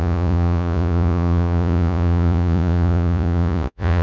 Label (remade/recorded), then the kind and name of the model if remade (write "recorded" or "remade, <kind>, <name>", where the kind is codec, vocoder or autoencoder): remade, vocoder, Vocos